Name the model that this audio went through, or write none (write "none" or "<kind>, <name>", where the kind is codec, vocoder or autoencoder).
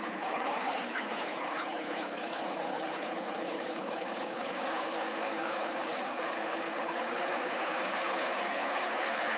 codec, HILCodec